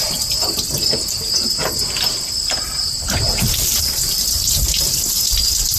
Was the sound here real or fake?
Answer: fake